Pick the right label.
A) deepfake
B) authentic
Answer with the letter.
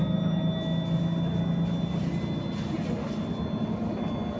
B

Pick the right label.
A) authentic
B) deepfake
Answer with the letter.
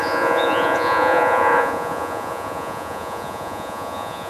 B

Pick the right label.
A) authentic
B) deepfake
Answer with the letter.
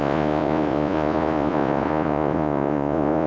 B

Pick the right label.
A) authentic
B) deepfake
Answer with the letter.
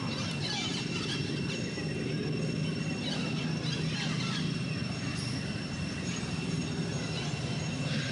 A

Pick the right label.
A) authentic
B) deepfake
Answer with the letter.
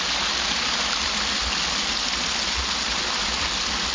A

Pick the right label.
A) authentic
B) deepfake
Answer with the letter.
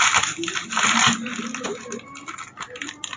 A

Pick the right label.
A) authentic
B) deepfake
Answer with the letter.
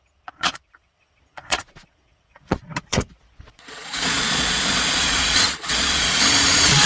B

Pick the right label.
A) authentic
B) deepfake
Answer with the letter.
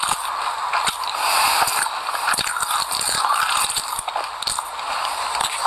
A